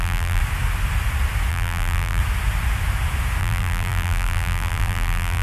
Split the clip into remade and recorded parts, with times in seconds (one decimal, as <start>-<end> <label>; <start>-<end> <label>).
0.0-0.4 remade; 0.4-1.5 recorded; 1.5-2.2 remade; 2.2-3.4 recorded; 3.4-5.4 remade